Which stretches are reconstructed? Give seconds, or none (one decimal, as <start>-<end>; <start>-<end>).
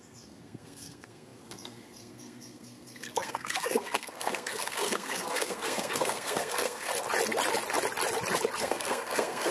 0.0-6.9; 8.6-9.5